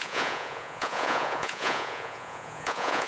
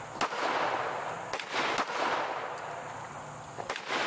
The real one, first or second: second